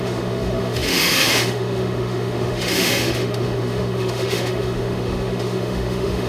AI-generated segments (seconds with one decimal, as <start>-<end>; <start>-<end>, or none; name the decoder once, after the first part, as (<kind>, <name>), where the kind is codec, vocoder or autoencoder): 0.0-6.3 (autoencoder, DAC-VAE)